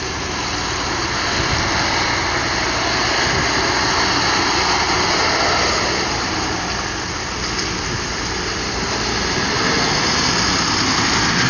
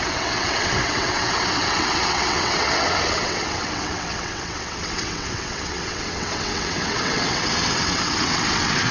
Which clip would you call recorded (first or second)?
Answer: first